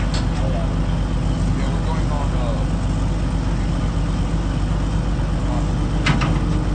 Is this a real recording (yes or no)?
yes